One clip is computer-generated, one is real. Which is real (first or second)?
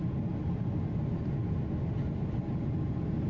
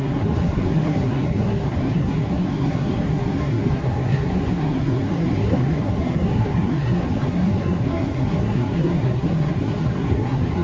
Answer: first